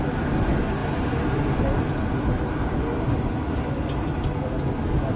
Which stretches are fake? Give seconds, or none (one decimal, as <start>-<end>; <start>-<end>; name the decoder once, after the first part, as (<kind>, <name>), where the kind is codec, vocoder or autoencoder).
none